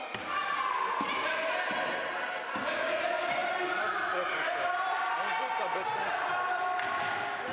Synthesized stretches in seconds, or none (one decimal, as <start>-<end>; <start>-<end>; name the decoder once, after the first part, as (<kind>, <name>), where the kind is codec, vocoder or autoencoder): none